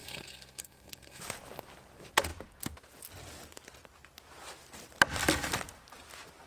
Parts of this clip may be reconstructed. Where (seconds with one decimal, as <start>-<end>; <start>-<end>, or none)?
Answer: 0.0-1.2